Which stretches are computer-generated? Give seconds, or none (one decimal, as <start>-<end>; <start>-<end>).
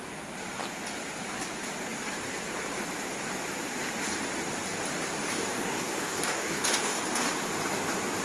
5.2-7.0